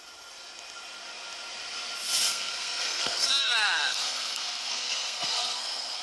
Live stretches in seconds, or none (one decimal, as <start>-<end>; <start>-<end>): 0.0-2.2